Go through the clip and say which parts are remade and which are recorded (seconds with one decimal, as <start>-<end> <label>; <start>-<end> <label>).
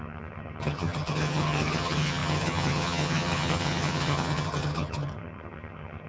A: 0.0-6.1 remade